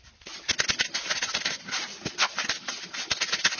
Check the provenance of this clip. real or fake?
real